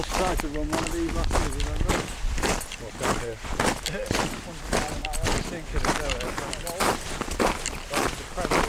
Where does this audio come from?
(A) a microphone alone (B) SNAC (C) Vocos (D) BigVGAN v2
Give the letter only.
A